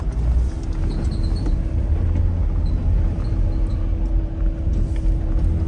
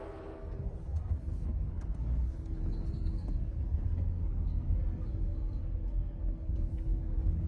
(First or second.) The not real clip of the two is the second